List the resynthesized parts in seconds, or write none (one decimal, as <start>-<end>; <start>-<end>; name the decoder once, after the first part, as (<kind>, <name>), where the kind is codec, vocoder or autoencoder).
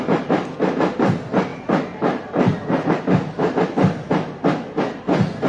none